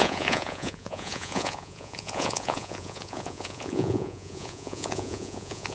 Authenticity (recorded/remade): remade